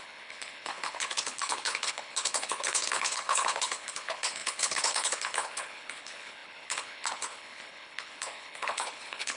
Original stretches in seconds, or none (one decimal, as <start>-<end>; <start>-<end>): none